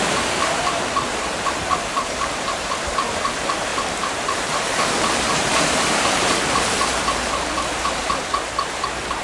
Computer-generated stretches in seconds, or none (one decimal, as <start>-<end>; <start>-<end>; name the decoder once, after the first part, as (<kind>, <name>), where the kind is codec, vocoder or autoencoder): 0.0-9.2 (vocoder, BigVGAN v2)

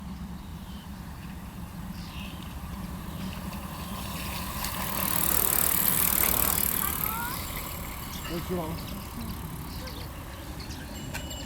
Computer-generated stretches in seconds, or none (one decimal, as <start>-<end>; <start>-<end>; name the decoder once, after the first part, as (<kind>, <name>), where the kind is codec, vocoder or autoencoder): 0.5-4.7 (vocoder, BigVGAN v2)

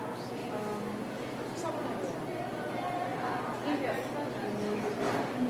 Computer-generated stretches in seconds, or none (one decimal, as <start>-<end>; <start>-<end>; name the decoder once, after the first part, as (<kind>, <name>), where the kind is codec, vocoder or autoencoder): none

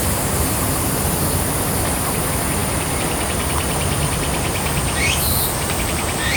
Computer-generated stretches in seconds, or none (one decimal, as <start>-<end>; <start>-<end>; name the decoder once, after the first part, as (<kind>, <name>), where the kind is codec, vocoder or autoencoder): 0.0-1.0 (vocoder, BigVGAN v2)

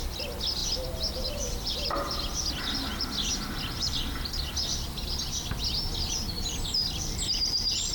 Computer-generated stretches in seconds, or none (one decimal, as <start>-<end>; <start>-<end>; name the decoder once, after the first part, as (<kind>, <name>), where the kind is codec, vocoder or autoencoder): none

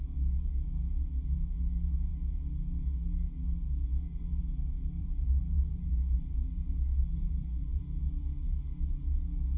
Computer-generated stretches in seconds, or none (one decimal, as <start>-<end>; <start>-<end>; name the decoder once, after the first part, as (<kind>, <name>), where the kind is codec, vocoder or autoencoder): 5.0-7.8 (vocoder, BigVGAN v2)

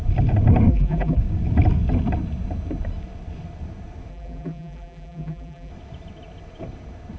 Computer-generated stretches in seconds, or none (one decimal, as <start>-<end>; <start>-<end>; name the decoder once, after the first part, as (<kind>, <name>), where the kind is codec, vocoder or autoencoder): 0.7-1.2 (vocoder, BigVGAN v2); 4.1-5.7